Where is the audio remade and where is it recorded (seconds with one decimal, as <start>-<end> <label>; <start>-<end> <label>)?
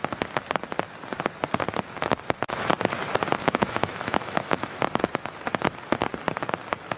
0.0-3.4 recorded; 3.4-4.8 remade; 4.8-7.0 recorded